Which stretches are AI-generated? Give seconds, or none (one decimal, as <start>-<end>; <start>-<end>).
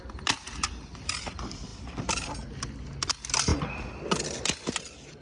none